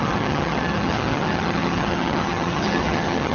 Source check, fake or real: fake